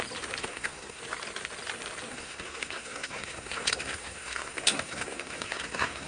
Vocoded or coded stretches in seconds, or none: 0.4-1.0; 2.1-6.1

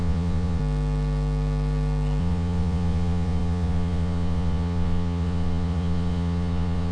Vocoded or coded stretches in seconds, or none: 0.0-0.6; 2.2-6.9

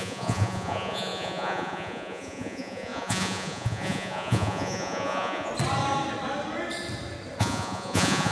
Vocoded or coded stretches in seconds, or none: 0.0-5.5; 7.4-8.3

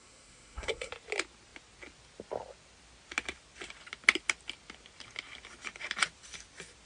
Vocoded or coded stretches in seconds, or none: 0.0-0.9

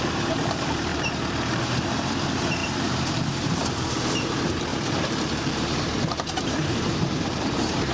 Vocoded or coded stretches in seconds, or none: 0.0-4.7; 5.4-7.9

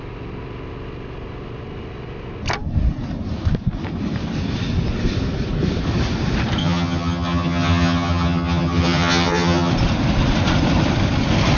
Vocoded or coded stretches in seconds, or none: 6.6-9.7

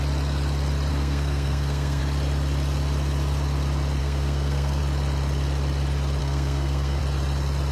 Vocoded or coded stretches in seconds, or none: 0.9-2.0; 4.0-4.8; 6.2-7.0